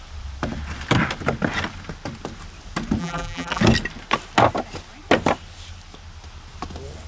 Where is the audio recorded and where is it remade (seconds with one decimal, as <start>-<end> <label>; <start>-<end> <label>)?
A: 0.0-3.0 recorded; 3.0-3.6 remade; 3.6-7.1 recorded